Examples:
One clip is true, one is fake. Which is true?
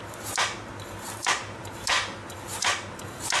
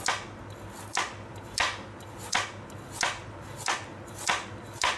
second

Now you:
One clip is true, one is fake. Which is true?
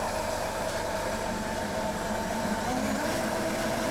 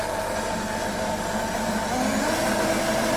second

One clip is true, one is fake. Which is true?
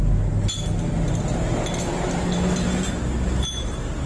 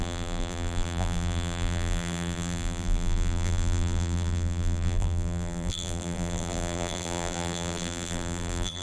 first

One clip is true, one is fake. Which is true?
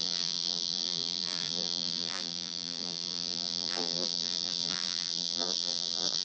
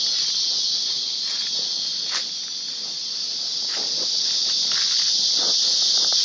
second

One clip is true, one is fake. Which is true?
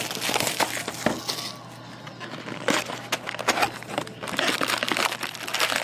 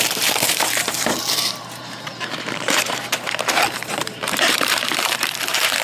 first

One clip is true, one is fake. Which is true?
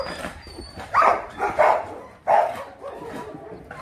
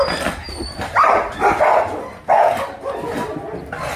second